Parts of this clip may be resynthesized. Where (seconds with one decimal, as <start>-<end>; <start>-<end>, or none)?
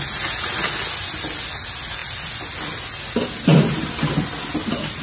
none